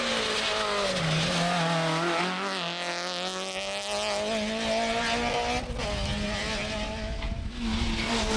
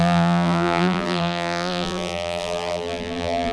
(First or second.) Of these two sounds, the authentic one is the first